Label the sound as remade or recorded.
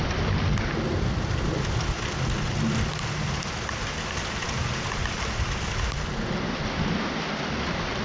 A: recorded